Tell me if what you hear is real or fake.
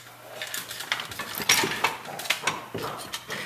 real